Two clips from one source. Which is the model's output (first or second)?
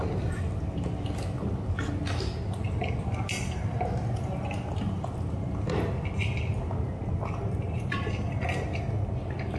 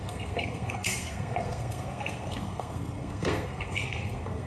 second